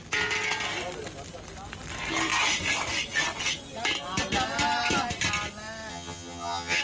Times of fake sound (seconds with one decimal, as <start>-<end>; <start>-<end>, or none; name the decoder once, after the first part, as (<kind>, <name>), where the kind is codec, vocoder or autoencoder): 5.9-6.8 (vocoder, HiFi-GAN)